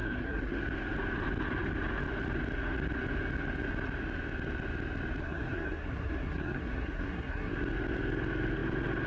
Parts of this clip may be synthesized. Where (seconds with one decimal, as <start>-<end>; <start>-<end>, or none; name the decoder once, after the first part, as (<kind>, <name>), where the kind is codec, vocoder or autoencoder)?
0.0-0.6 (codec, SNAC); 5.2-7.5